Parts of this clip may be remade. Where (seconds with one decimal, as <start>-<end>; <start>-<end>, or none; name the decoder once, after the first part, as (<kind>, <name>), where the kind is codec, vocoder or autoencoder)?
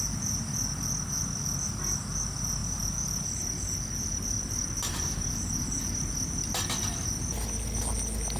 none